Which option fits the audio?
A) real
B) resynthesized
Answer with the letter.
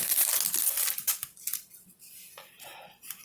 A